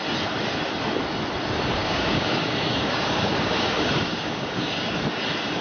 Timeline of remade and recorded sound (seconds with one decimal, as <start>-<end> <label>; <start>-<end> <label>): 0.0-1.8 recorded; 1.8-5.0 remade; 5.0-5.6 recorded